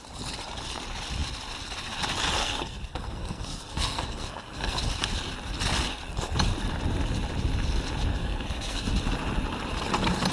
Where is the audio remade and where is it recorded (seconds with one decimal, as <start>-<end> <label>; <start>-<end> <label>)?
0.0-2.4 recorded; 2.4-4.8 remade; 4.8-8.1 recorded; 8.1-8.9 remade; 8.9-10.3 recorded